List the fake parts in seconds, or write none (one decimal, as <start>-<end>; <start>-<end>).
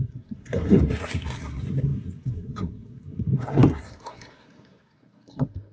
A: 0.0-5.7